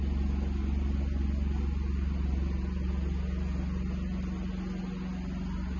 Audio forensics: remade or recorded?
recorded